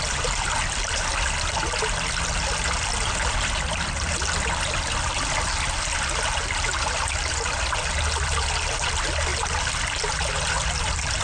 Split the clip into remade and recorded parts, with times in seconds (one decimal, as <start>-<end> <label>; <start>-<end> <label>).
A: 0.0-11.2 recorded